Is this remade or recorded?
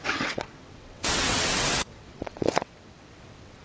remade